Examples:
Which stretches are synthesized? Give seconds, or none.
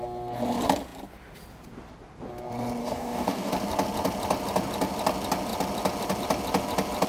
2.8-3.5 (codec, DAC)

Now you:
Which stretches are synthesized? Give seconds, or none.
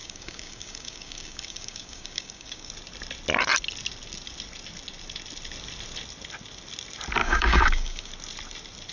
0.0-2.7 (codec, DAC); 7.2-8.1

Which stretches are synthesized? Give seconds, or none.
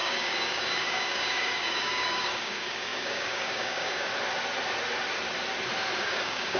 0.0-4.1 (codec, DAC); 6.0-6.6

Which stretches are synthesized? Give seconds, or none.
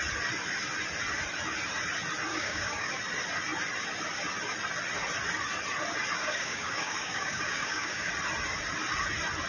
2.3-2.9 (codec, DAC); 6.2-8.1